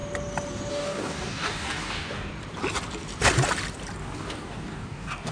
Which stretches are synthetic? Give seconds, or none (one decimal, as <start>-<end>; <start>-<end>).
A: 0.7-2.3; 4.0-5.3